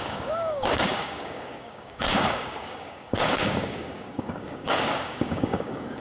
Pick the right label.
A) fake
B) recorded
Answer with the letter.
A